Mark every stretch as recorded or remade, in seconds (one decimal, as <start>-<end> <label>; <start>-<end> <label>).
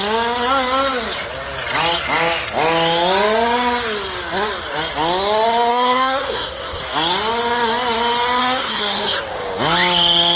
0.0-5.7 recorded; 5.7-6.8 remade; 6.8-8.4 recorded; 8.4-9.2 remade; 9.2-10.4 recorded